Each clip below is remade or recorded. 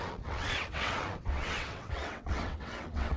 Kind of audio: remade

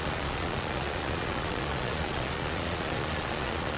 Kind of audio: remade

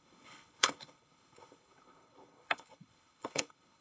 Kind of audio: remade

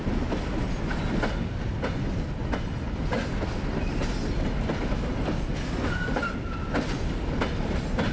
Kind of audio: recorded